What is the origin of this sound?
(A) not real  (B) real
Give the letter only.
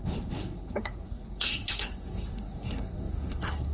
A